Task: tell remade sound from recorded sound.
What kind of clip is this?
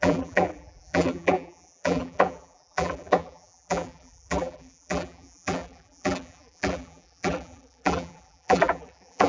remade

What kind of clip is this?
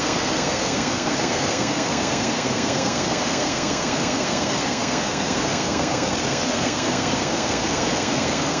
remade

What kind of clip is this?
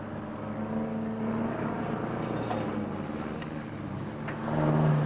recorded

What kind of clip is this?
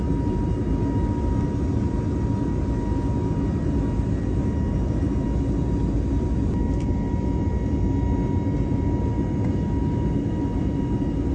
recorded